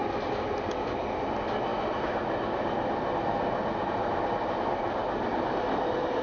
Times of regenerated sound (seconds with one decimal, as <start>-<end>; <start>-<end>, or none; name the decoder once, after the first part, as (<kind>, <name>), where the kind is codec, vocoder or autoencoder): none